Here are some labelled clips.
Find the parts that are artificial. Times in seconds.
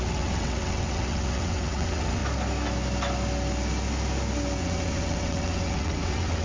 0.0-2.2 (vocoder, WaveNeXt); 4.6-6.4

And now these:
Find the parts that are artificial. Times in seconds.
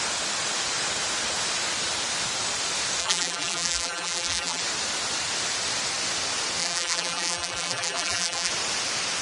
3.0-4.6 (vocoder, BigVGAN v2); 6.6-8.5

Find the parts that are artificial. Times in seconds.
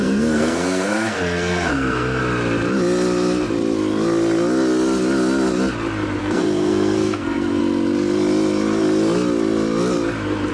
0.0-2.2 (codec, SNAC); 6.2-7.6